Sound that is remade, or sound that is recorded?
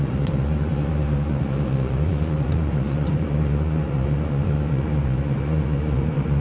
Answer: remade